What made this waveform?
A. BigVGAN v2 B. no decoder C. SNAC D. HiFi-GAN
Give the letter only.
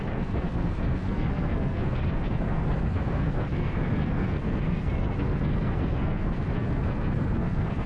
C